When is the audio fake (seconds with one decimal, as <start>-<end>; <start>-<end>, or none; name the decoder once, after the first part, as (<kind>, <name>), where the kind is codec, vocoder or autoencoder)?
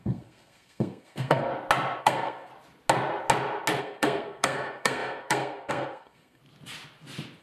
0.0-1.5 (codec, SNAC); 2.0-2.5; 3.8-6.4